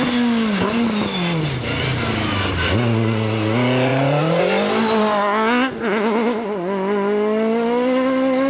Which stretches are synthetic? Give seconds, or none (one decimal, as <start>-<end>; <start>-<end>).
3.9-4.4